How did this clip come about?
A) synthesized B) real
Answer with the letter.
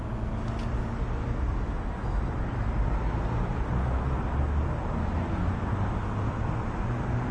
B